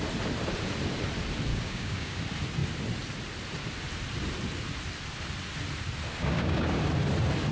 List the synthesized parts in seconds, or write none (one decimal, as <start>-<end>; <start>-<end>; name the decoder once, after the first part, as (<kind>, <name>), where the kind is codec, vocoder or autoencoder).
1.5-2.2 (codec, DAC); 6.2-6.8